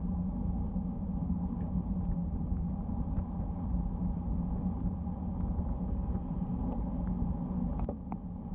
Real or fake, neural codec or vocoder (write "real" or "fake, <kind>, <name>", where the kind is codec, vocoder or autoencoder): real